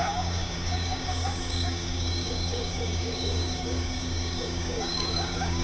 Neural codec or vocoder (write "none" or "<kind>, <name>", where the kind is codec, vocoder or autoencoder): codec, DAC